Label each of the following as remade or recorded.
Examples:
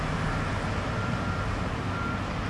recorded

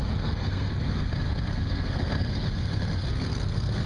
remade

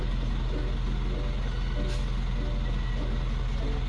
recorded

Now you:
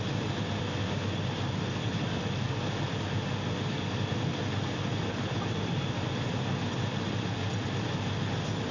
recorded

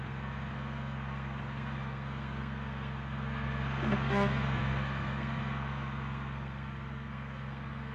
remade